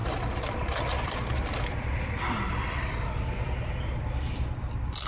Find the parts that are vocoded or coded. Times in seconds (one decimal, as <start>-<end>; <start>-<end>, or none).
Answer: 0.0-3.1